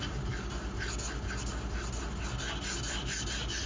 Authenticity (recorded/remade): recorded